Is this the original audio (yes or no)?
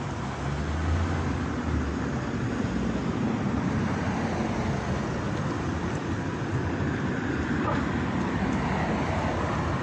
yes